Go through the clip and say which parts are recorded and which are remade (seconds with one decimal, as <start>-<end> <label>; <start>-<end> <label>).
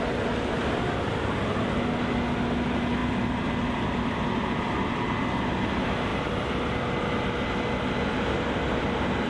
0.0-9.3 recorded